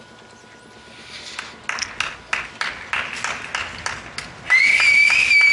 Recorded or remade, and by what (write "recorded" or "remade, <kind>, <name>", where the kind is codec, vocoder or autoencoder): recorded